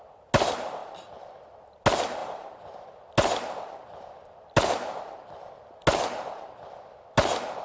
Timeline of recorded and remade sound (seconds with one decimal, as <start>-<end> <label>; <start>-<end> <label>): 0.0-7.6 recorded